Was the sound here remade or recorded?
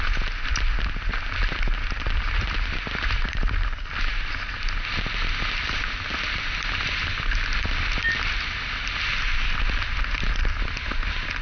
recorded